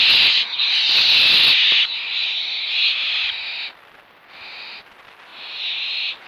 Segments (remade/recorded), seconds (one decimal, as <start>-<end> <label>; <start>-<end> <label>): 0.0-6.3 recorded